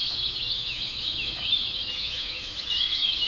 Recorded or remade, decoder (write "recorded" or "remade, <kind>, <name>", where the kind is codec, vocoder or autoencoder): remade, autoencoder, DAC-VAE